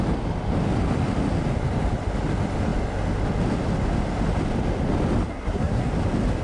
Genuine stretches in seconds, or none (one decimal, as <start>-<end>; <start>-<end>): 0.0-5.3; 5.9-6.4